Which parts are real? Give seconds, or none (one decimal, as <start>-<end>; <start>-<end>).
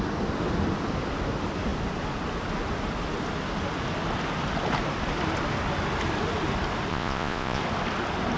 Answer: 0.0-6.9; 7.6-8.4